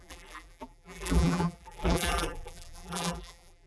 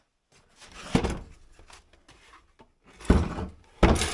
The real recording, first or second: second